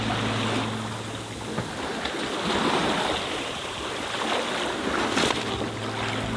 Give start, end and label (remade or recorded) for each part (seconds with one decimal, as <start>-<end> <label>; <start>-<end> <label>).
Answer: 0.0-6.4 recorded